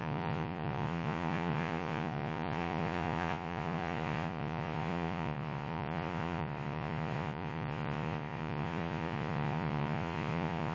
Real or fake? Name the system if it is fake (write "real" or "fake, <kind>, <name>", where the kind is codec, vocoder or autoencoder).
fake, vocoder, Vocos